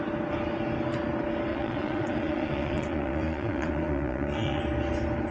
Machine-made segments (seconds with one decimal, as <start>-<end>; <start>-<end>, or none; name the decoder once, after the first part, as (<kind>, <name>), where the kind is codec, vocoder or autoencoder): 1.5-4.6 (vocoder, Vocos)